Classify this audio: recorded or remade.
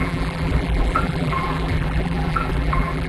remade